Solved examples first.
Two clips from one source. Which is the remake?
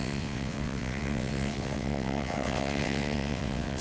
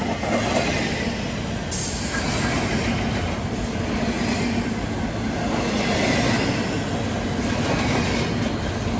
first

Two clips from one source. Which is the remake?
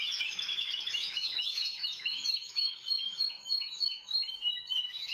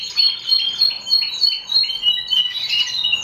first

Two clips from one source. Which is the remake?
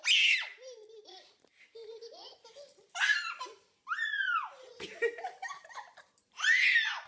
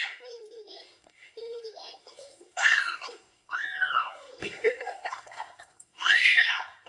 second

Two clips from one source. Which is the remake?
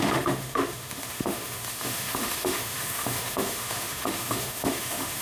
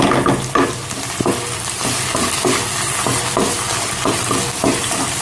first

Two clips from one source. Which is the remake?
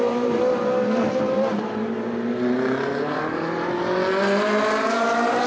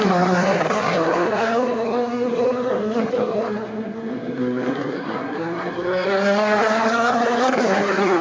second